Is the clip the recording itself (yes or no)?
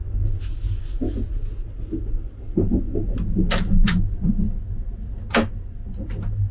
yes